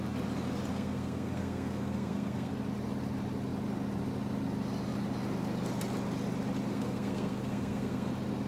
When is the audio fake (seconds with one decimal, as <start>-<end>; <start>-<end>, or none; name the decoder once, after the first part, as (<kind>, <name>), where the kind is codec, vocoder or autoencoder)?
0.7-2.5 (codec, SNAC); 6.7-8.1